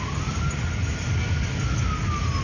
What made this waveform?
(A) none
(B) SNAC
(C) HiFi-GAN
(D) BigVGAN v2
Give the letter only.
A